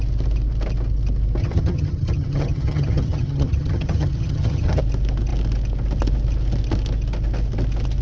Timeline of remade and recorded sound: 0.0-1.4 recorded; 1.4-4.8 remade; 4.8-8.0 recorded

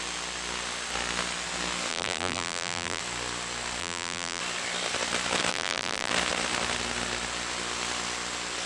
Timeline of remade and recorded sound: 0.0-1.9 recorded; 1.9-3.0 remade; 3.0-3.8 recorded; 3.8-4.4 remade; 4.4-5.5 recorded; 5.5-6.1 remade; 6.1-8.7 recorded

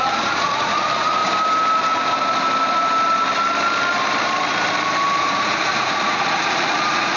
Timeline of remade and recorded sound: 0.0-1.2 remade; 1.2-5.2 recorded; 5.2-7.2 remade

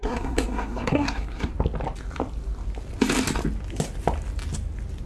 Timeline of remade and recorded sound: 0.0-1.5 remade; 1.5-5.1 recorded